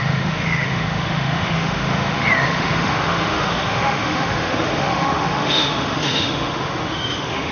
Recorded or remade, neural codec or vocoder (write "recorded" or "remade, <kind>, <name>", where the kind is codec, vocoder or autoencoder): remade, autoencoder, DAC-VAE